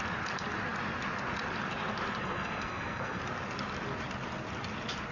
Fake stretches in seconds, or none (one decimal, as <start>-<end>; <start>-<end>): 2.2-3.2